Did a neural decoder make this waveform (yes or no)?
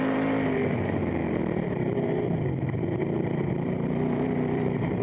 yes